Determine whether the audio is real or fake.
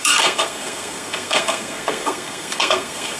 fake